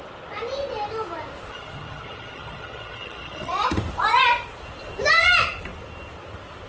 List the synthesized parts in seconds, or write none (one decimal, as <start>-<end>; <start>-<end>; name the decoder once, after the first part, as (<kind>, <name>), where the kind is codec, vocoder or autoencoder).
1.5-3.5 (vocoder, HiFi-GAN)